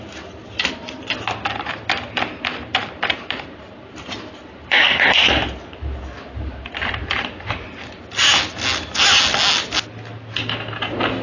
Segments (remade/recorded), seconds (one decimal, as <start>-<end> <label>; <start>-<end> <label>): 0.0-2.5 recorded; 2.5-5.2 remade; 5.2-11.2 recorded